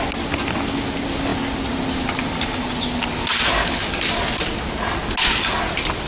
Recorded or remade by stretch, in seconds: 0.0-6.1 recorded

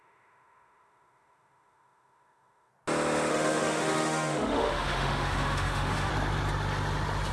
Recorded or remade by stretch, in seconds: 0.0-2.7 remade; 2.7-3.3 recorded; 3.3-6.1 remade; 6.1-7.3 recorded

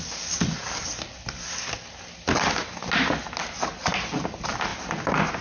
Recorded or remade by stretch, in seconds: 0.0-5.4 recorded

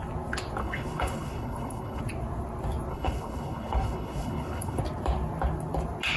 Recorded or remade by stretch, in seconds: 0.0-0.6 recorded; 0.6-2.0 remade; 2.0-2.9 recorded; 2.9-4.8 remade; 4.8-6.2 recorded

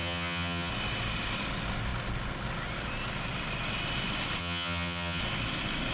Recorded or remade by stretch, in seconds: 0.0-0.7 remade; 0.7-4.4 recorded; 4.4-5.2 remade; 5.2-5.9 recorded